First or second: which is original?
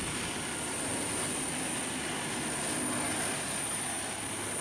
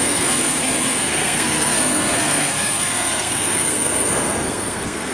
first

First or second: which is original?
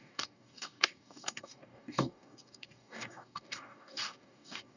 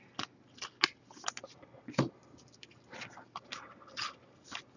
second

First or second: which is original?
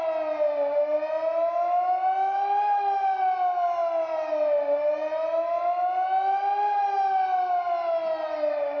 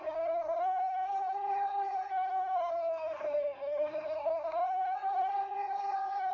first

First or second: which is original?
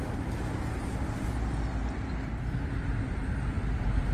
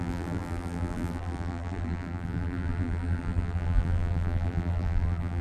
first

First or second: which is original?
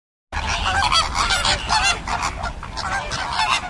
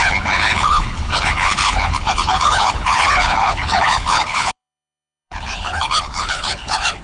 first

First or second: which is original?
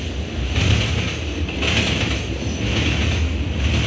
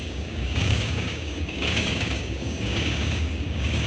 first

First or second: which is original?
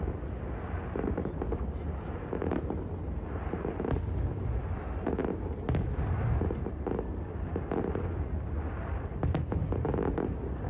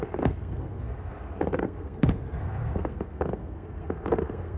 first